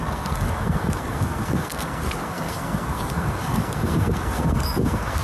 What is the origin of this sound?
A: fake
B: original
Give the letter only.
A